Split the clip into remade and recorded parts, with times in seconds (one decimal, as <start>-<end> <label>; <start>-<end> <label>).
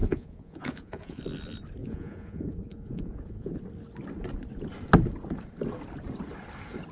0.0-1.2 remade; 1.2-1.8 recorded; 1.8-3.6 remade; 3.6-6.9 recorded